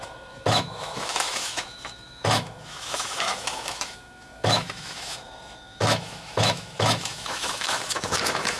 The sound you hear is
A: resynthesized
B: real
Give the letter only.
A